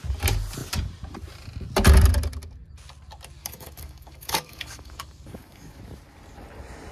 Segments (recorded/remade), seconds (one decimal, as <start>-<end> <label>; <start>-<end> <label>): 0.0-3.4 recorded; 3.4-5.8 remade; 5.8-6.9 recorded